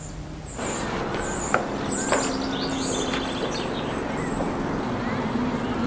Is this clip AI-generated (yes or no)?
no